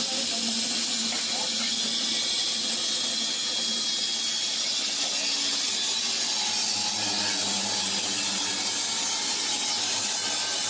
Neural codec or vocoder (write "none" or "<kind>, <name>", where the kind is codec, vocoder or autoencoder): none